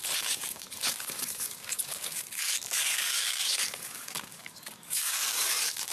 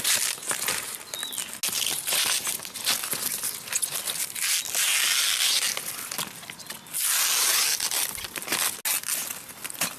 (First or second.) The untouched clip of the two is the second